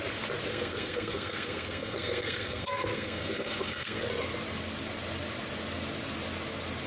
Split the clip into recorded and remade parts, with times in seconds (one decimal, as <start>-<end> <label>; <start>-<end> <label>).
0.0-0.5 recorded; 0.5-4.0 remade; 4.0-6.9 recorded